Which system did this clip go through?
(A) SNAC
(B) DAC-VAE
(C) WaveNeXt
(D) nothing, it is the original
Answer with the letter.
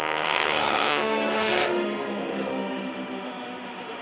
B